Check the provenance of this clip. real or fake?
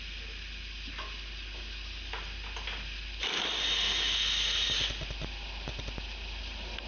real